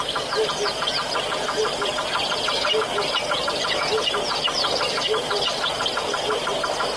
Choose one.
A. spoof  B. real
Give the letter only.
B